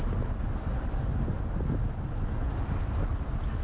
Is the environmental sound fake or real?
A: real